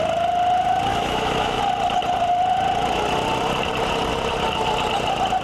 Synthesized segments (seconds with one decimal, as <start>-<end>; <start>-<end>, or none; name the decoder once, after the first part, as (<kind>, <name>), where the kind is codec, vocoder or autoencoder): 0.9-1.6 (autoencoder, DAC-VAE)